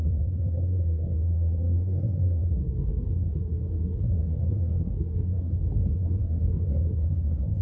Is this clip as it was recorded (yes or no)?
no